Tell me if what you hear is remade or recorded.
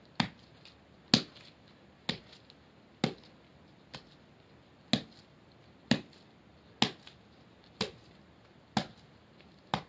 recorded